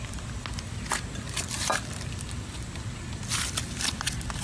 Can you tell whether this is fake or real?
real